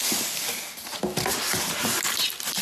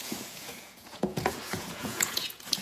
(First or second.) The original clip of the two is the first